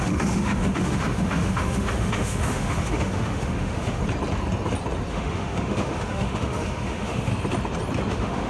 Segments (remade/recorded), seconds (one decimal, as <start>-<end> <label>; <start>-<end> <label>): 0.0-4.0 remade; 4.0-5.1 recorded; 5.1-7.3 remade; 7.3-8.1 recorded; 8.1-8.5 remade